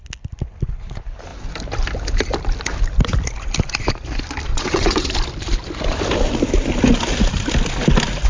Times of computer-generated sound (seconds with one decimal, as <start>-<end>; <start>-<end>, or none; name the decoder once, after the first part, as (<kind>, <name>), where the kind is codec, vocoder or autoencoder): 4.5-5.1 (vocoder, WaveNeXt)